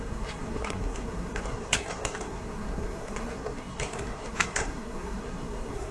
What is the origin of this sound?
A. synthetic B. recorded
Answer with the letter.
A